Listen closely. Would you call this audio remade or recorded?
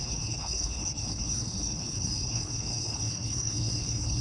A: remade